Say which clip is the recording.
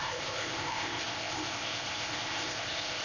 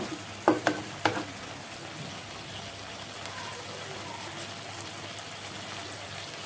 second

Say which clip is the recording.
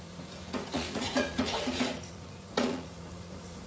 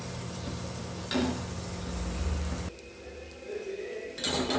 second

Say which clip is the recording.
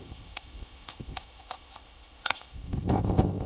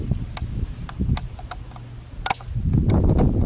second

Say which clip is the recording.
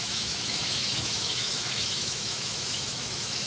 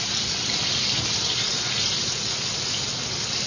second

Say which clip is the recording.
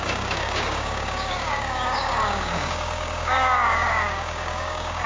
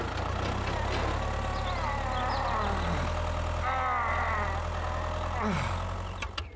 second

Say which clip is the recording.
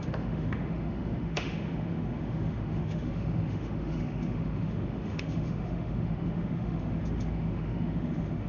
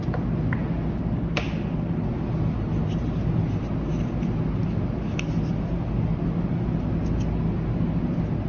second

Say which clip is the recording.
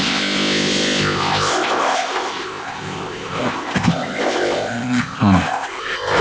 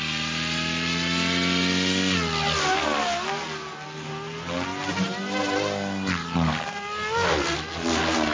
second